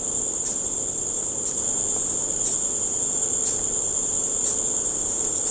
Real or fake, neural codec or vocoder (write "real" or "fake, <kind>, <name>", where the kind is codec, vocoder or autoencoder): fake, vocoder, BigVGAN v2